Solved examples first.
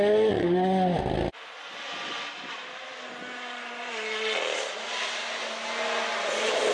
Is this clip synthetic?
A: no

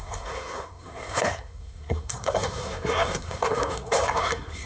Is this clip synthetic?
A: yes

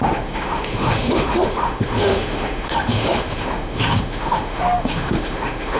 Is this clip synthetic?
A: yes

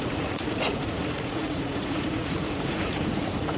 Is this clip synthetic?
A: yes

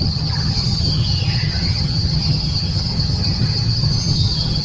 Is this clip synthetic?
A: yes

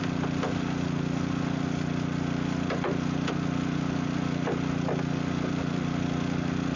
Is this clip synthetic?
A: no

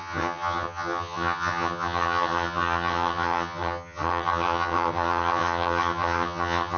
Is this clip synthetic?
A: yes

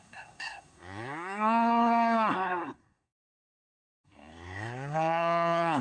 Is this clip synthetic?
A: yes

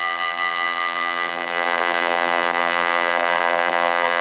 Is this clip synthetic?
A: yes